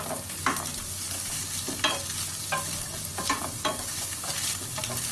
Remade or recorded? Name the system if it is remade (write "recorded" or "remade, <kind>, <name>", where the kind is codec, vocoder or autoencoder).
recorded